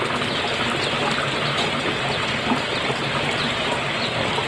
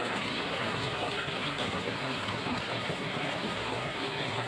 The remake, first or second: second